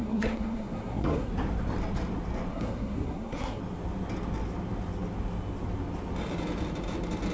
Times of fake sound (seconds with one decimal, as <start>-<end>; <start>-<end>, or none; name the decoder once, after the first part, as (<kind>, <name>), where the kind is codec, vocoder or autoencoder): 0.0-1.3 (codec, SNAC); 2.5-3.6